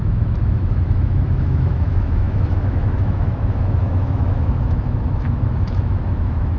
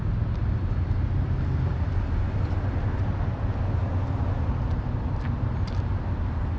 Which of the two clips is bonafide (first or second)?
second